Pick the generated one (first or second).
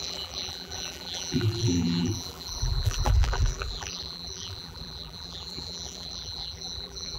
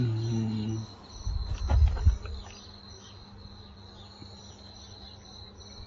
first